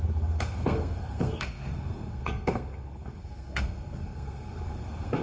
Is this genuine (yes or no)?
no